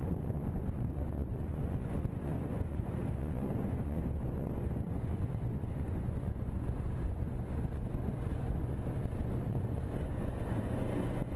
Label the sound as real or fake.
fake